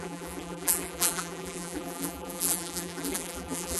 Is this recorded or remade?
remade